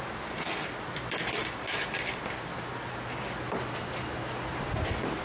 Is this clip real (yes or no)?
yes